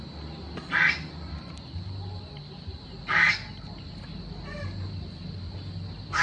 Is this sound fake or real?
real